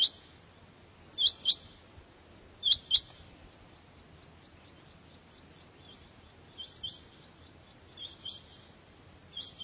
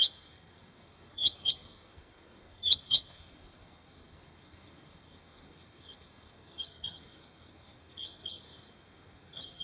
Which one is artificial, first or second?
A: second